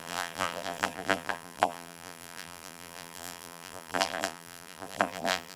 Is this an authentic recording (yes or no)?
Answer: no